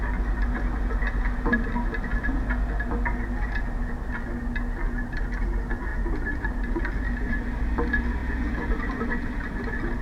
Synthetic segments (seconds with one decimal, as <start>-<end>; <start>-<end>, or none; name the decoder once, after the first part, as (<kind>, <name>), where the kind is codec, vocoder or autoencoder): 5.9-6.8 (vocoder, BigVGAN v2)